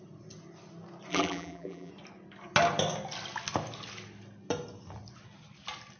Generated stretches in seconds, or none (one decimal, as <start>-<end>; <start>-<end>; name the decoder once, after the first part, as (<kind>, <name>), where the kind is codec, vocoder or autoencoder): 1.1-1.9 (vocoder, BigVGAN v2)